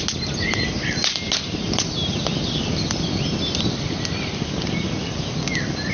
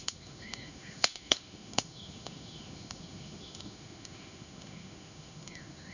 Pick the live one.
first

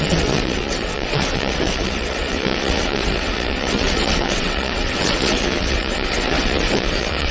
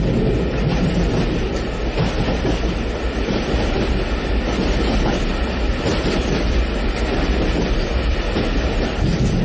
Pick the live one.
second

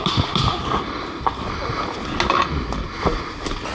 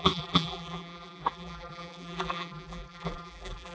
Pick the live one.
first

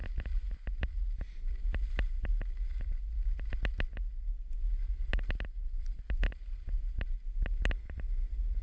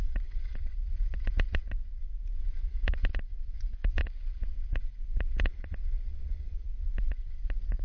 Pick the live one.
first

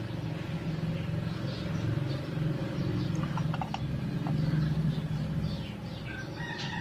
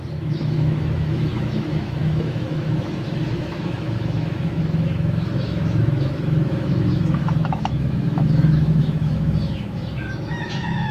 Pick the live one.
first